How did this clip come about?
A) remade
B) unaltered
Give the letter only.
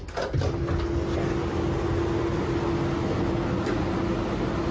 B